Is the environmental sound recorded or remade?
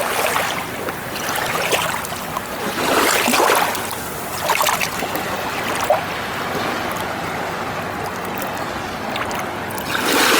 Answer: recorded